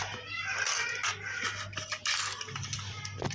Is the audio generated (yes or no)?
yes